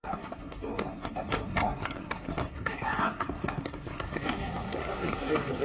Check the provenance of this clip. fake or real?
fake